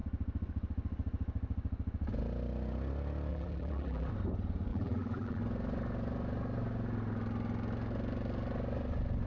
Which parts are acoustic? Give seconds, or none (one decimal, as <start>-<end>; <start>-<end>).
0.0-3.3; 4.1-4.7; 5.4-9.3